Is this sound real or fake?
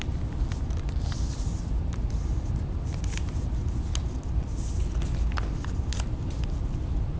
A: real